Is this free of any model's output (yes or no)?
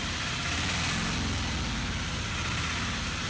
yes